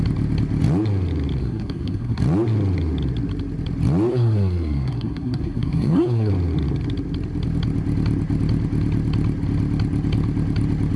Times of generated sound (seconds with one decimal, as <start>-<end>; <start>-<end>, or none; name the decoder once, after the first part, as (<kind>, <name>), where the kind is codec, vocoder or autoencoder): 1.4-2.2 (codec, SNAC); 4.1-6.3